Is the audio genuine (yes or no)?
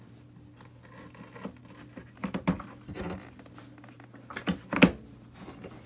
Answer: yes